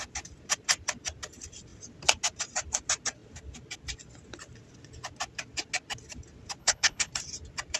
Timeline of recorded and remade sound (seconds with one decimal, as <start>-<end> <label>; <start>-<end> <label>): 0.0-6.6 recorded; 6.6-7.1 remade; 7.1-7.8 recorded